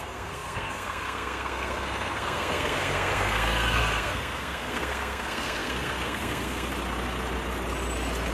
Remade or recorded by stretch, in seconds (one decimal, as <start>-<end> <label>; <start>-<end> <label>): 0.0-6.7 remade; 6.7-8.3 recorded